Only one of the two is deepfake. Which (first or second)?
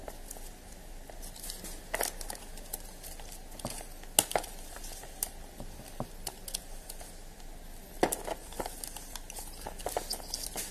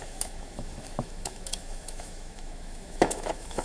second